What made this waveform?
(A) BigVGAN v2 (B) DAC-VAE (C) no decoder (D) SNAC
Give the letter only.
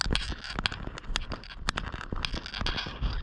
C